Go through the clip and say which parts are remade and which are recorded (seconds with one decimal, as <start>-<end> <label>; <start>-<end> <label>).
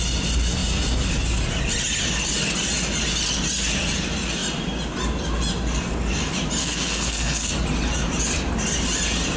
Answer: 0.0-6.6 recorded; 6.6-7.5 remade; 7.5-9.4 recorded